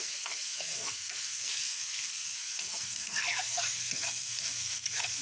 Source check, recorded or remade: remade